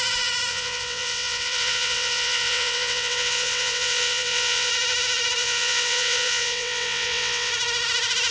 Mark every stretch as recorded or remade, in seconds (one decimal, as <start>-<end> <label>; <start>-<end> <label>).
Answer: 0.0-0.5 recorded; 0.5-4.7 remade; 4.7-5.4 recorded; 5.4-7.5 remade; 7.5-8.3 recorded